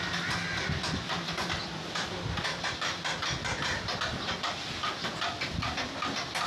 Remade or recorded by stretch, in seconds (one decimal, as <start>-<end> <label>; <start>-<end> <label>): 0.0-6.5 recorded